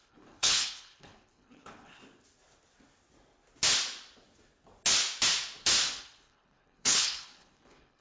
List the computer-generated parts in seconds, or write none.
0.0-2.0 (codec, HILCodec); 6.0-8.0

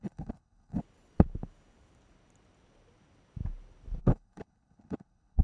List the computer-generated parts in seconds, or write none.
0.0-0.8 (codec, HILCodec); 4.0-5.4

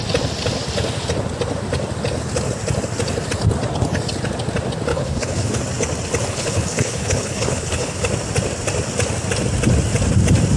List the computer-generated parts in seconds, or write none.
4.9-5.6 (codec, HILCodec); 6.3-8.0